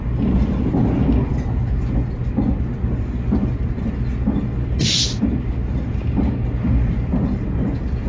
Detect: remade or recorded recorded